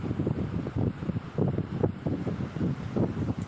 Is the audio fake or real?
real